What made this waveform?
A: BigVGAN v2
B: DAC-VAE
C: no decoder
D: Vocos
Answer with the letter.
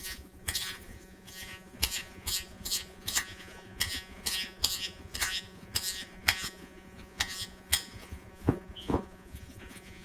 D